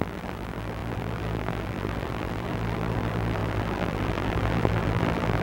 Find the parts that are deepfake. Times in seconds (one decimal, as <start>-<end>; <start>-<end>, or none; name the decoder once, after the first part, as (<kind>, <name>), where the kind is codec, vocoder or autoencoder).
0.0-5.4 (vocoder, BigVGAN v2)